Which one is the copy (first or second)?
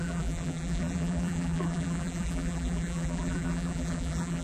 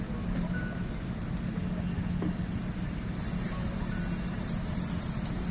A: first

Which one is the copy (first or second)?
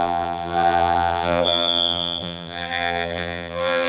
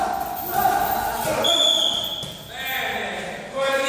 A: first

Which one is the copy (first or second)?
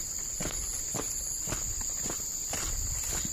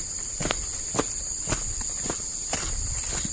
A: first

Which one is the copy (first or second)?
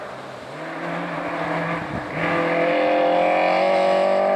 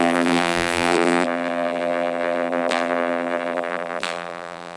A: second